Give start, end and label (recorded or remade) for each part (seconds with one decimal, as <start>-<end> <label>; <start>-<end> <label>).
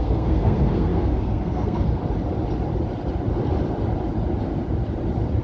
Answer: 0.0-2.0 remade; 2.0-5.4 recorded